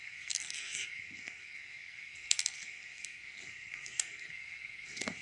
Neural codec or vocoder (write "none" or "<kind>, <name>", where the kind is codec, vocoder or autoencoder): codec, SNAC